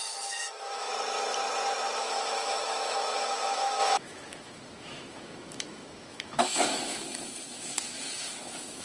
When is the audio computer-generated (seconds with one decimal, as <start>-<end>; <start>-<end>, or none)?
0.0-0.9; 2.0-8.8